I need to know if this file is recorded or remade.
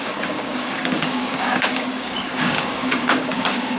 remade